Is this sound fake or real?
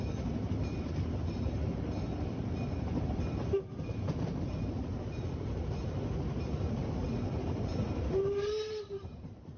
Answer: fake